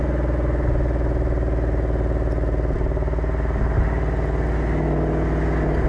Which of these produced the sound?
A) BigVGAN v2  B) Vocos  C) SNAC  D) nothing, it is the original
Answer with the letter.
D